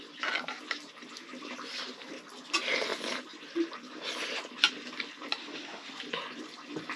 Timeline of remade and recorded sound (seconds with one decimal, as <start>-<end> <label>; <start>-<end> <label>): 0.0-5.4 recorded; 5.4-5.9 remade; 5.9-7.0 recorded